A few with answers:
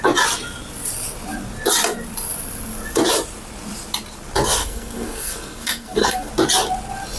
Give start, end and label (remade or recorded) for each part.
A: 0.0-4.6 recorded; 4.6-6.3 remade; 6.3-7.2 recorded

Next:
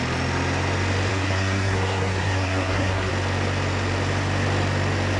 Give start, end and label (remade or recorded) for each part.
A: 0.0-1.1 recorded; 1.1-3.1 remade; 3.1-5.2 recorded